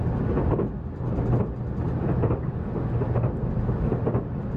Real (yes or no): yes